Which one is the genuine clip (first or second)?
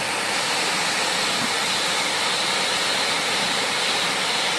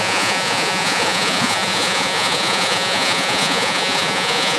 first